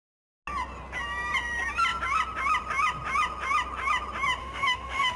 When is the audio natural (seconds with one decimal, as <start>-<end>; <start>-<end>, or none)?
0.0-4.4